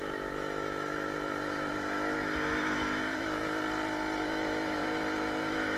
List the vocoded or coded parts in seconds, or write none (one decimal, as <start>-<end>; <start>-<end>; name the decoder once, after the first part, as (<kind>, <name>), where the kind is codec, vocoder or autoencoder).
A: 0.0-3.4 (autoencoder, DAC-VAE); 4.2-5.8

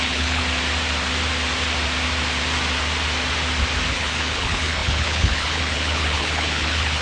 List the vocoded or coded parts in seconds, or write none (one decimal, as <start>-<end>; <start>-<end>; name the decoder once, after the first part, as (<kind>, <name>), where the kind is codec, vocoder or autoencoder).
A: 0.0-0.4 (codec, HILCodec); 3.9-7.0

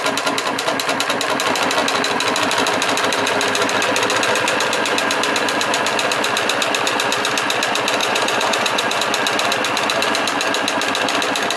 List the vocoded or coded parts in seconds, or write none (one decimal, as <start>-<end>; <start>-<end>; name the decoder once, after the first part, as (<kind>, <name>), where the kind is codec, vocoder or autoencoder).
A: 8.0-9.0 (vocoder, Vocos)

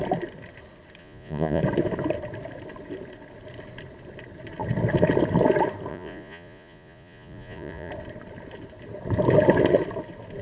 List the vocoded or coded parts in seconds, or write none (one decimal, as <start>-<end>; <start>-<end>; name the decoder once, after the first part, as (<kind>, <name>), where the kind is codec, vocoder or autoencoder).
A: 1.0-1.6 (vocoder, Vocos); 5.9-7.9

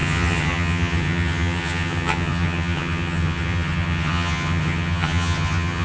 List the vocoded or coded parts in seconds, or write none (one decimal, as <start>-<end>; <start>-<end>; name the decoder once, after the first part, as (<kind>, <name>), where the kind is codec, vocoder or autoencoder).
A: 0.0-5.8 (vocoder, HiFi-GAN)

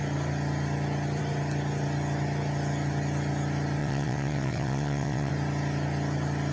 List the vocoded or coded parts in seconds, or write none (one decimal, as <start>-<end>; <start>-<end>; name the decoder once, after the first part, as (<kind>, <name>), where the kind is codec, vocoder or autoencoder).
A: 3.8-5.3 (vocoder, WaveNeXt)